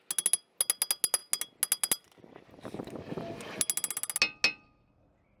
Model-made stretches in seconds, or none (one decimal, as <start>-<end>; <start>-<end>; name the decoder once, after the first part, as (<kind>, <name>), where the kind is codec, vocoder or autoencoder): none